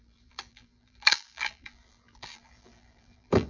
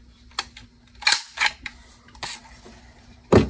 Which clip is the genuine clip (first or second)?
second